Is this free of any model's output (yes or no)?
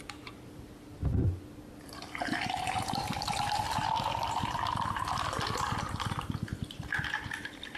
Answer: no